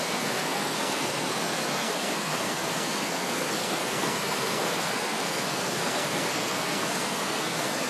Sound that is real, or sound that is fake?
fake